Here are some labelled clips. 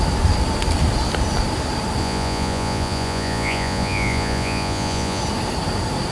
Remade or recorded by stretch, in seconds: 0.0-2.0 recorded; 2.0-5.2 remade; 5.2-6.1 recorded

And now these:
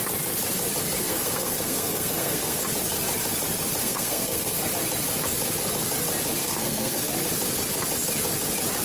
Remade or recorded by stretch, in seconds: 0.0-1.0 recorded; 1.0-2.6 remade; 2.6-3.8 recorded; 3.8-4.6 remade; 4.6-6.4 recorded; 6.4-7.0 remade; 7.0-8.8 recorded